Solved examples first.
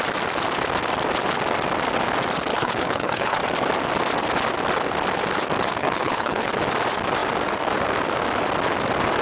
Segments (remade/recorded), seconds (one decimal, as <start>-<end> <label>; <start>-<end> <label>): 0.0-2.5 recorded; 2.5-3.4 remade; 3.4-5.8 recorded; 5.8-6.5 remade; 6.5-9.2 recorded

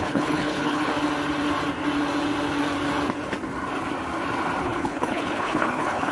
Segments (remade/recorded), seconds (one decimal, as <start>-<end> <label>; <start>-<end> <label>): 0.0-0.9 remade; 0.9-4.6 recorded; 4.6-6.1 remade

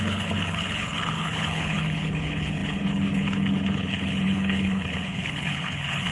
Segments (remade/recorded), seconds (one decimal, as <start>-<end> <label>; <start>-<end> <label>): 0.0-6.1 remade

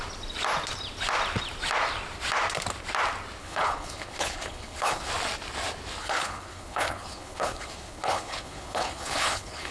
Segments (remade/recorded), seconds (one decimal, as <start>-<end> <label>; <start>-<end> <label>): 0.0-3.4 recorded; 3.4-5.1 remade; 5.1-6.0 recorded; 6.0-9.7 remade

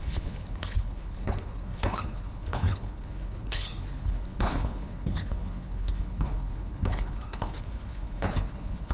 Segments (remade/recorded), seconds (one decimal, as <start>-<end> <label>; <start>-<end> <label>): 0.0-8.9 remade